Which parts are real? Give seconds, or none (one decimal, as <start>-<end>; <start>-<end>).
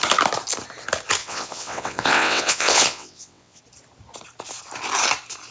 0.0-1.2; 3.6-5.5